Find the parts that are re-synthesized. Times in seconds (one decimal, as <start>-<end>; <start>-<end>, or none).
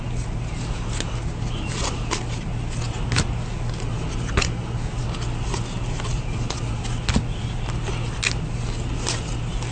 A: none